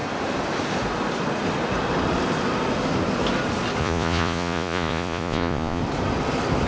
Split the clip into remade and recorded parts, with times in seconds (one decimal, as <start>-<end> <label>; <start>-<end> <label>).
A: 0.0-3.8 recorded; 3.8-5.8 remade; 5.8-6.7 recorded